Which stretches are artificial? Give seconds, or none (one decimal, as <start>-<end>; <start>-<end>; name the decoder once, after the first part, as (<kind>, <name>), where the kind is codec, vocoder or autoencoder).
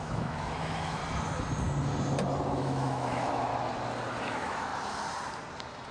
0.0-1.0 (autoencoder, DAC-VAE); 2.6-3.5; 4.2-4.7